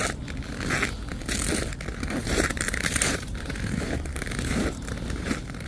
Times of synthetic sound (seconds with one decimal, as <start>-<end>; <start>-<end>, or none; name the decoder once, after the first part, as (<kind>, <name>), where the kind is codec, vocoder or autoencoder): 1.9-5.3 (vocoder, BigVGAN v2)